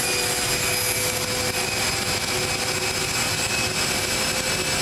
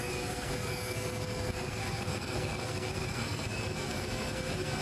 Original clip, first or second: first